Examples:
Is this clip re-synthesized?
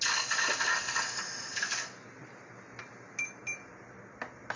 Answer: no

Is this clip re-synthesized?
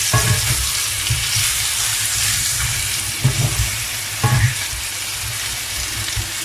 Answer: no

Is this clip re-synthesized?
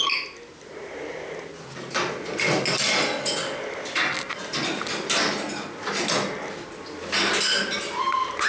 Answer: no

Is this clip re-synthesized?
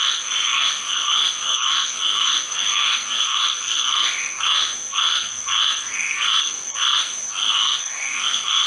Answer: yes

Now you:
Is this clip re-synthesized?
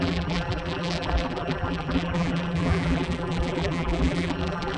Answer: yes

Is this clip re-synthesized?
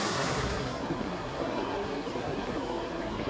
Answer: yes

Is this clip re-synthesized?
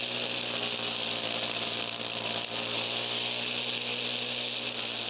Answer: no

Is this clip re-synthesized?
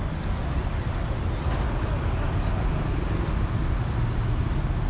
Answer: no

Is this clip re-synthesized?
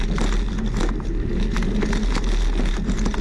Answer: no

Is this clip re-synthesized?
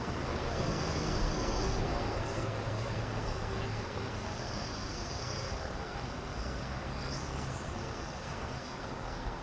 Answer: yes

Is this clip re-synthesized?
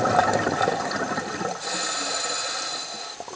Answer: no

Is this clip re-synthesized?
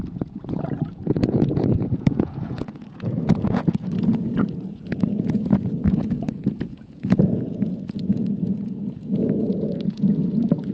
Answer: yes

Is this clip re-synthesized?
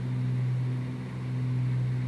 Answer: no